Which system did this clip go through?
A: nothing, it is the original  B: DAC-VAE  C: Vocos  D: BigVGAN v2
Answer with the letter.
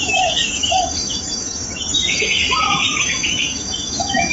B